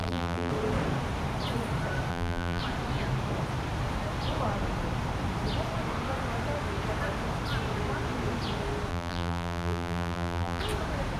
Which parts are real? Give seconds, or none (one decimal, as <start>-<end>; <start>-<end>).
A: 0.5-2.1; 2.6-8.9; 10.6-11.2